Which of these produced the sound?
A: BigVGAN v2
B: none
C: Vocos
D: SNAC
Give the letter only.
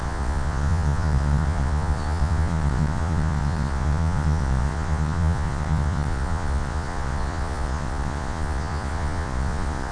C